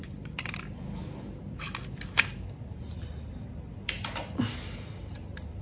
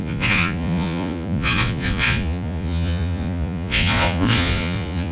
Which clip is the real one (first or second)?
first